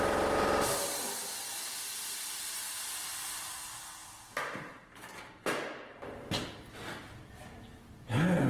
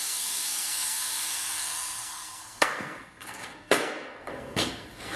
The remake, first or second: second